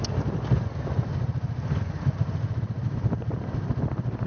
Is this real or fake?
fake